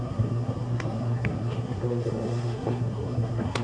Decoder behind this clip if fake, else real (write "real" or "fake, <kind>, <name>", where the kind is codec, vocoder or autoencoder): fake, codec, SNAC